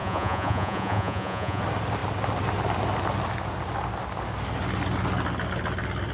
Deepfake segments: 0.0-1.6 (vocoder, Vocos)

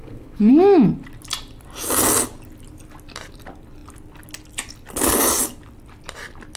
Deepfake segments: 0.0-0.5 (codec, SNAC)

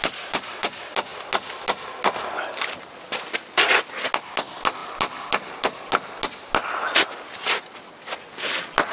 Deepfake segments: none

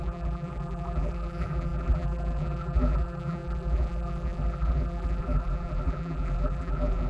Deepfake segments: 0.0-7.1 (vocoder, BigVGAN v2)

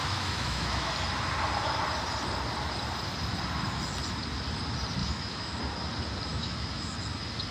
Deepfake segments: 0.0-0.9 (autoencoder, DAC-VAE); 5.0-5.6; 6.3-6.9